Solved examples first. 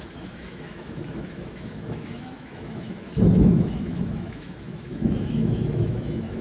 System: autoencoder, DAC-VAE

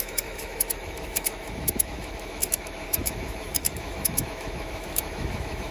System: autoencoder, DAC-VAE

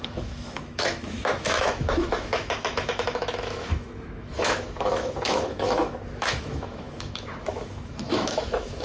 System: autoencoder, DAC-VAE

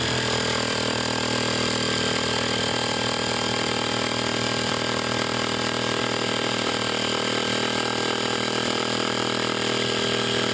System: none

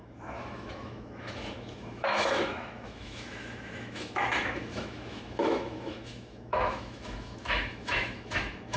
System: autoencoder, DAC-VAE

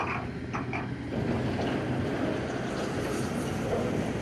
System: none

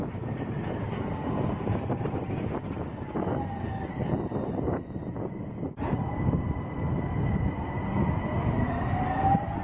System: none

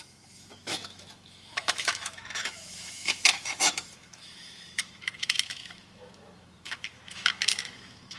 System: autoencoder, DAC-VAE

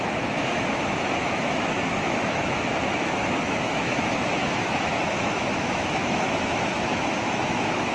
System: autoencoder, DAC-VAE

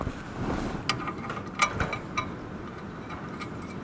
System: none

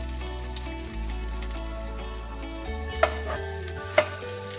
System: none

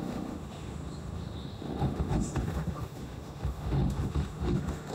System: autoencoder, DAC-VAE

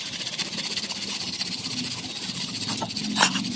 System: none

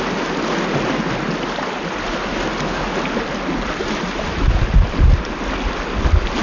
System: none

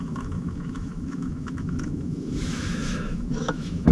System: autoencoder, DAC-VAE